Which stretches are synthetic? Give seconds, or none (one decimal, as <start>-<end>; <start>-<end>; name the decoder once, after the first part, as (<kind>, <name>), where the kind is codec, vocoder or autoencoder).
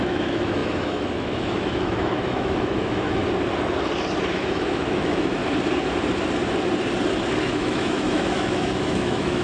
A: 0.0-3.2 (autoencoder, DAC-VAE); 4.3-5.4; 7.4-9.4